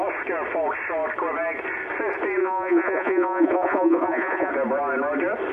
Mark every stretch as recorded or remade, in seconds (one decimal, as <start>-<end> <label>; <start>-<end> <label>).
0.0-2.4 recorded; 2.4-4.5 remade; 4.5-5.5 recorded

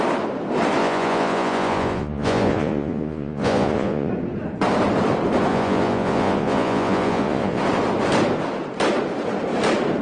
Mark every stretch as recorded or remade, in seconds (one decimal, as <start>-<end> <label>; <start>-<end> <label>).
0.0-0.8 recorded; 0.8-4.1 remade; 4.1-5.5 recorded; 5.5-7.6 remade; 7.6-10.0 recorded

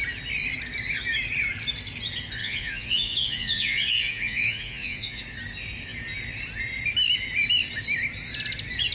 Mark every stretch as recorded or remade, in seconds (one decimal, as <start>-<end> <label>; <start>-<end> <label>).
0.0-2.4 recorded; 2.4-5.2 remade; 5.2-8.9 recorded

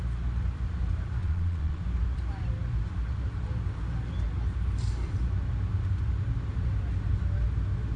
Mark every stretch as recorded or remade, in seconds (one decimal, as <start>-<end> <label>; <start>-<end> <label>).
0.0-1.2 recorded; 1.2-1.8 remade; 1.8-8.0 recorded

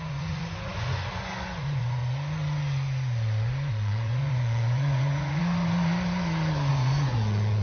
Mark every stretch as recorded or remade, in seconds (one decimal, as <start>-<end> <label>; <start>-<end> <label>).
0.0-2.0 remade; 2.0-3.7 recorded; 3.7-5.4 remade; 5.4-6.7 recorded; 6.7-7.6 remade